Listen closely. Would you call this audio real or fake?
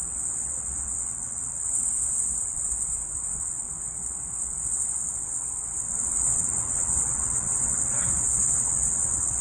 fake